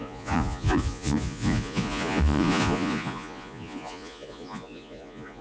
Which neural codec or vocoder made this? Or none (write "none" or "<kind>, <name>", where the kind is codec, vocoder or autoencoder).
vocoder, Vocos